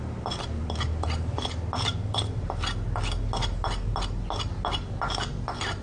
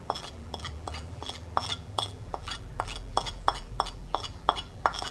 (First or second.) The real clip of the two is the first